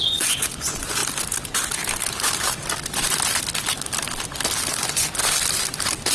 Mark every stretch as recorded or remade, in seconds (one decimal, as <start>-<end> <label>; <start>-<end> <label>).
0.0-1.0 remade; 1.0-4.7 recorded; 4.7-5.2 remade; 5.2-6.1 recorded